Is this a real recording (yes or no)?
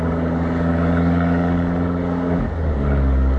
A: no